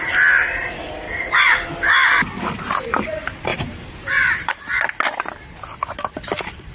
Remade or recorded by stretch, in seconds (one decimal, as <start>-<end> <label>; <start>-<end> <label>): 0.0-0.4 recorded; 0.4-1.6 remade; 1.6-3.5 recorded; 3.5-4.5 remade; 4.5-6.7 recorded